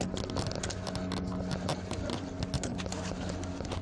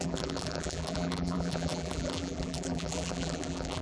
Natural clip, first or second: first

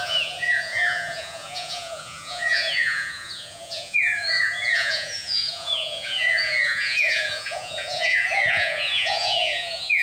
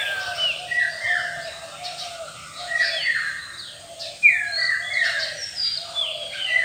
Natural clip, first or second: second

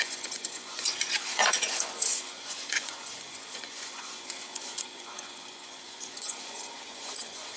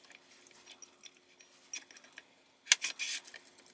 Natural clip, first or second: second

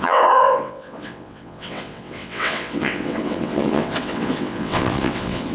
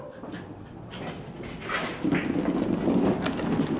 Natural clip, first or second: second